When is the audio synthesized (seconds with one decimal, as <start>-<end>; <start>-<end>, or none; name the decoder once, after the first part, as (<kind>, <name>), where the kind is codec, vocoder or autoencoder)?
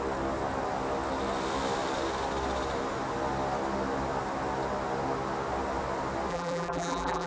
6.3-7.3 (vocoder, BigVGAN v2)